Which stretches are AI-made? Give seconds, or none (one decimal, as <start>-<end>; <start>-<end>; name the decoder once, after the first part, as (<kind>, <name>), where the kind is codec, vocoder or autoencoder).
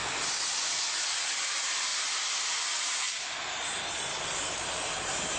1.1-1.9 (vocoder, BigVGAN v2); 2.8-5.4